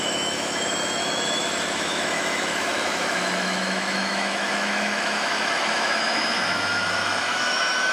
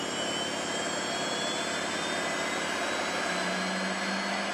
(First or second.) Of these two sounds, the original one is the second